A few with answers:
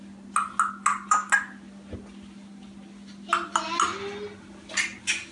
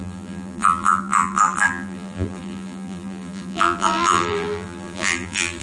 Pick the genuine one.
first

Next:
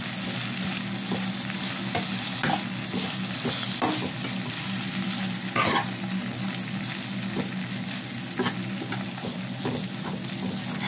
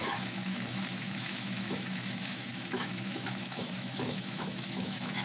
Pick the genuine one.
first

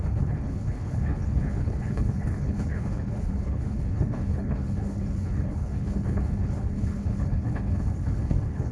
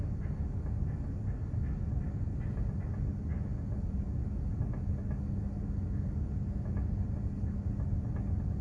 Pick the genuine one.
second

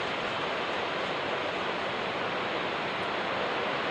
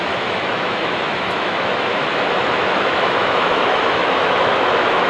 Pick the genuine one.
first